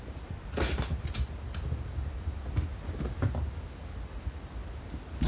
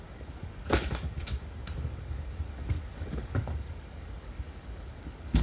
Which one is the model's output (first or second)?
second